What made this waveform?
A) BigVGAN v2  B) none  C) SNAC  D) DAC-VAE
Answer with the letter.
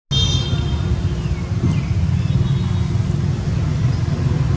B